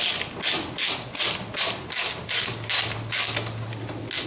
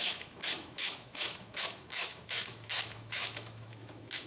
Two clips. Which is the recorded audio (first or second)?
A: first